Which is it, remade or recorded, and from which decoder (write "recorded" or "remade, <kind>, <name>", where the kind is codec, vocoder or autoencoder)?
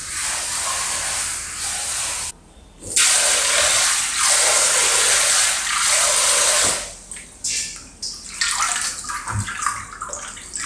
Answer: recorded